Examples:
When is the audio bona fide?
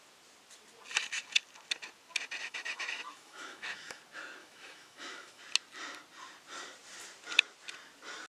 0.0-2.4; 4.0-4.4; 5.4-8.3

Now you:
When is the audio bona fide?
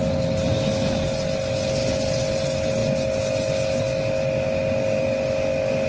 0.0-5.9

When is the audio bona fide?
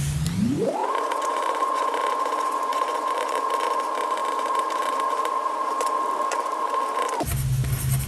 0.0-0.8; 3.5-8.1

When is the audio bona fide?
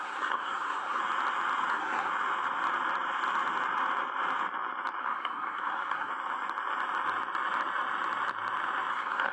1.0-1.7; 2.1-5.0; 6.1-8.9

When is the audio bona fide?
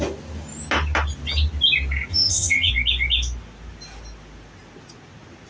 0.0-2.1; 2.7-5.5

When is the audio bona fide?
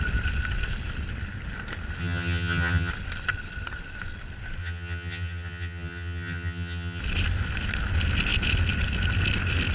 0.0-2.0; 2.9-4.6; 7.0-9.7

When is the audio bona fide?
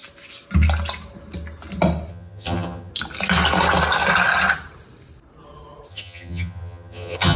0.0-2.1; 2.9-5.9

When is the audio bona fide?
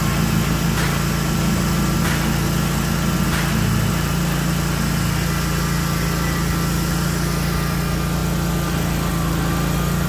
0.0-10.1